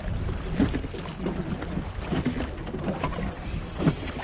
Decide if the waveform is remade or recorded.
recorded